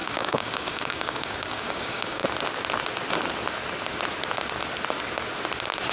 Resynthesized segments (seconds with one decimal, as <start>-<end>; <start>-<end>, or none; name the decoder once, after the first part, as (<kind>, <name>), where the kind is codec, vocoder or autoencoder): 0.0-2.2 (codec, DAC)